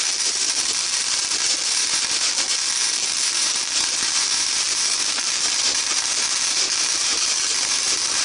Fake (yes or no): yes